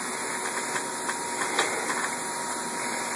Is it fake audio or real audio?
real